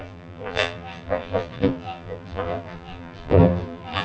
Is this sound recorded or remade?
remade